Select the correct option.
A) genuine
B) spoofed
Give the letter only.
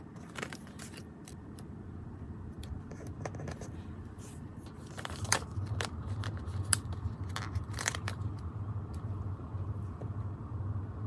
B